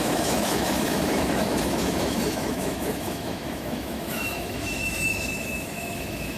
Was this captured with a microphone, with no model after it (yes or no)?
no